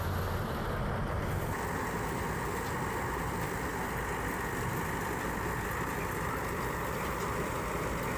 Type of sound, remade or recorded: recorded